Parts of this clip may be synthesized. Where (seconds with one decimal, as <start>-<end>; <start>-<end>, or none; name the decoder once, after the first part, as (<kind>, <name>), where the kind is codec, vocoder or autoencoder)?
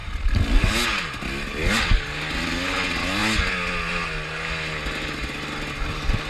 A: none